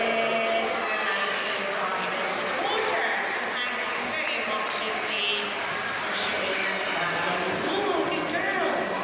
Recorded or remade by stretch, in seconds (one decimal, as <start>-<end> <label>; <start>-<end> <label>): 0.0-9.0 recorded